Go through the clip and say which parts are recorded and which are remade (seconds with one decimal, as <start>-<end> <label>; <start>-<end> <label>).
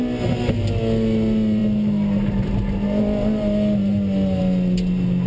0.0-5.3 recorded